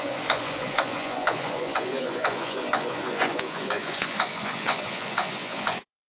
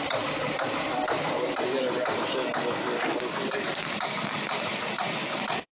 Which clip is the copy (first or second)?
first